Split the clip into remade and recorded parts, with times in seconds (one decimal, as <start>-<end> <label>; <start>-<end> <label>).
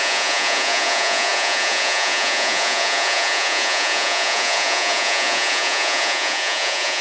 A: 0.0-7.0 remade